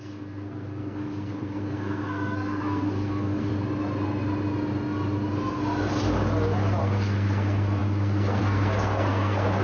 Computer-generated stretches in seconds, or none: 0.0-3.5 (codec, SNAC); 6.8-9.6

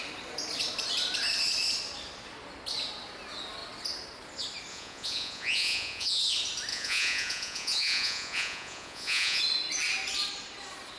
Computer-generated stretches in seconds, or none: 4.7-6.2 (vocoder, Vocos); 6.7-9.4

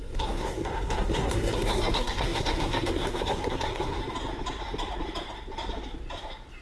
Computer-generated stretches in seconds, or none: 0.0-4.0 (codec, SNAC)

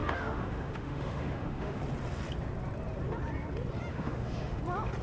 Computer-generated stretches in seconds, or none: 0.0-1.8 (autoencoder, DAC-VAE); 3.9-4.6

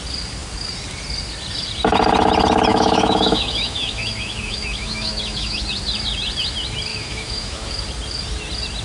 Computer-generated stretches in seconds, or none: 2.7-5.6 (autoencoder, DAC-VAE); 6.9-7.7

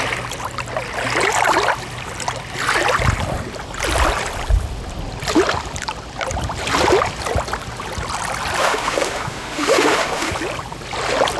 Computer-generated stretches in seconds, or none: 8.6-10.3 (autoencoder, DAC-VAE)